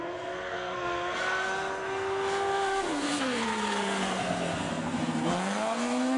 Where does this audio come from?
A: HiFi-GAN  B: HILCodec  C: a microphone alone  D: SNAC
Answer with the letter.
D